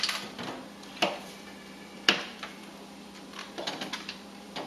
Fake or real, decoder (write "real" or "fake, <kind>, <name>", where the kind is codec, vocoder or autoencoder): fake, vocoder, BigVGAN v2